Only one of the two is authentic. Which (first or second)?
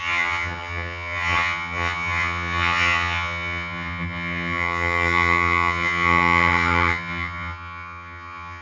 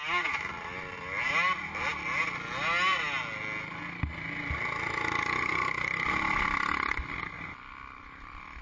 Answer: second